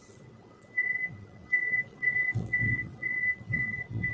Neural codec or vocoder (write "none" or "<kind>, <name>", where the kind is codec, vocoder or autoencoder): vocoder, WaveNeXt